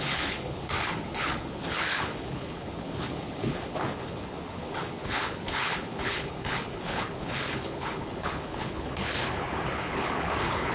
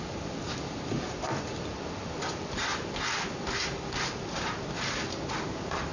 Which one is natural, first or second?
second